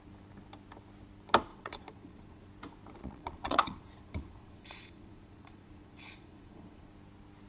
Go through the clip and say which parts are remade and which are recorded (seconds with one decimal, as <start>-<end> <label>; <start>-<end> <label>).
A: 0.0-1.5 recorded; 1.5-2.5 remade; 2.5-3.0 recorded; 3.0-6.9 remade; 6.9-7.5 recorded